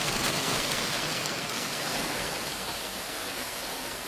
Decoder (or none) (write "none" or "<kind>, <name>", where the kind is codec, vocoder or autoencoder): codec, SNAC